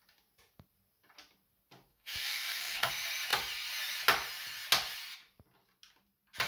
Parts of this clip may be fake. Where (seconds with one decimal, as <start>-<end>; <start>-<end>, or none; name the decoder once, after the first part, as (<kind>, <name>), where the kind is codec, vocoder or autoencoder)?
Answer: 1.9-2.9 (codec, DAC)